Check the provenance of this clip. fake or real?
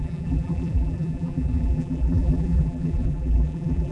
fake